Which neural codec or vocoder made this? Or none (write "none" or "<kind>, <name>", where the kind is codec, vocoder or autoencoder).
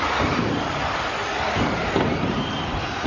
none